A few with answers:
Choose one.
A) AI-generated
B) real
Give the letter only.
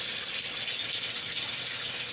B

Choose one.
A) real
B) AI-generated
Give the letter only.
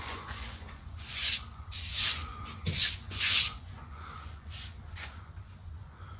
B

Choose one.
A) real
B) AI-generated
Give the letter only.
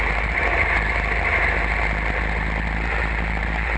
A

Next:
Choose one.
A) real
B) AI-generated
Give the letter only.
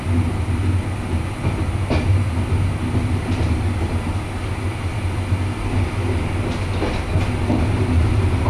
A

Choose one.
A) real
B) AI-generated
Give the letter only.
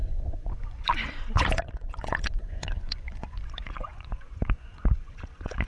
B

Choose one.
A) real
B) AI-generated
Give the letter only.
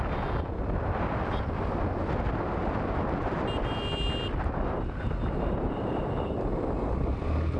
A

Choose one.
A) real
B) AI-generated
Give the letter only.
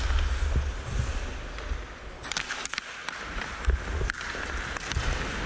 A